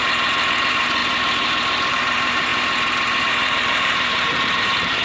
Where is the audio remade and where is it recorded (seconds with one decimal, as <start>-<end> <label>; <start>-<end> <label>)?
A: 0.0-1.0 remade; 1.0-1.9 recorded; 1.9-2.5 remade; 2.5-3.2 recorded; 3.2-5.0 remade